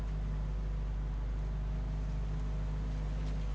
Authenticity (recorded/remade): recorded